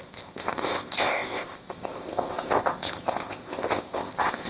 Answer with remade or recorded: remade